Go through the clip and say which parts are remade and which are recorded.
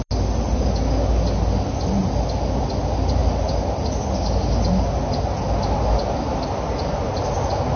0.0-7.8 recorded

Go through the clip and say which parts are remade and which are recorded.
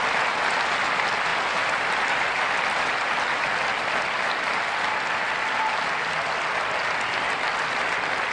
0.0-8.3 recorded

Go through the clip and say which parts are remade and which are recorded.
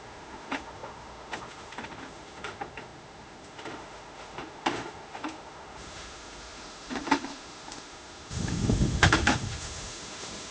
0.0-10.5 remade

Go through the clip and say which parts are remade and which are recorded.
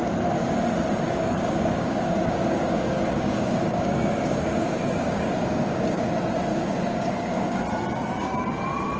0.0-1.1 recorded; 1.1-6.1 remade; 6.1-6.5 recorded; 6.5-7.6 remade; 7.6-9.0 recorded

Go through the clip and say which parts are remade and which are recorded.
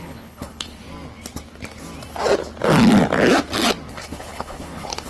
0.0-0.8 remade; 0.8-3.9 recorded; 3.9-5.1 remade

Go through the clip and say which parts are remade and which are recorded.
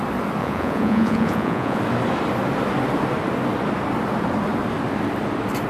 0.0-0.4 recorded; 0.4-1.8 remade; 1.8-5.7 recorded